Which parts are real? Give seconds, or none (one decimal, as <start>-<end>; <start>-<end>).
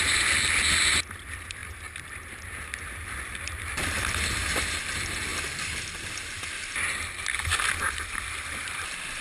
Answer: 1.6-3.0; 5.3-8.6